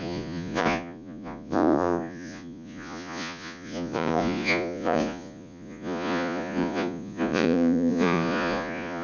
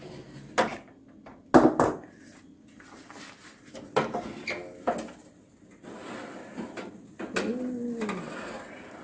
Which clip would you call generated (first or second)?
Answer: first